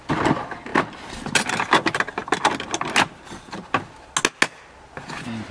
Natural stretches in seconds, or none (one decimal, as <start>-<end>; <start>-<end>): 0.0-5.5